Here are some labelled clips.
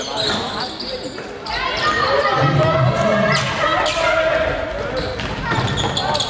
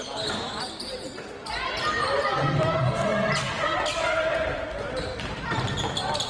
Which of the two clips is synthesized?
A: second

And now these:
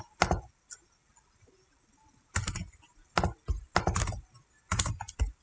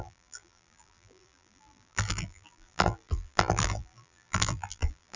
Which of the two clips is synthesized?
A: second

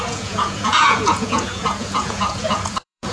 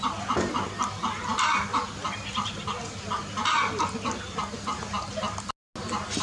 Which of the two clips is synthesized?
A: first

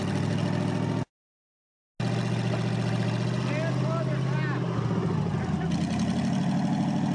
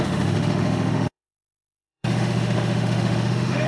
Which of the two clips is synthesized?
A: second